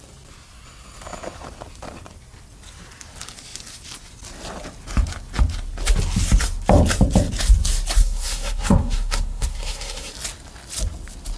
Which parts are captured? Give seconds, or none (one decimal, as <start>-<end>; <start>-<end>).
0.0-8.0; 10.1-11.4